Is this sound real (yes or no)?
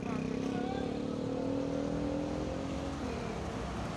yes